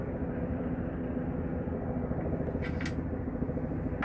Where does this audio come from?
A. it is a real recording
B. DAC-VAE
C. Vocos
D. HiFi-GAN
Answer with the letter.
A